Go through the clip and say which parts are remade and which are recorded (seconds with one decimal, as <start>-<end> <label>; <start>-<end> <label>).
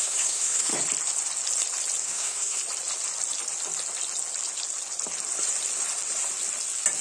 0.0-0.7 remade; 0.7-2.0 recorded; 2.0-2.6 remade; 2.6-7.0 recorded